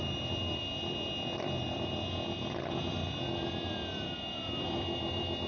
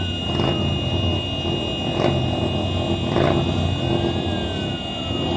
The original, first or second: second